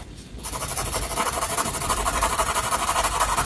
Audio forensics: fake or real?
fake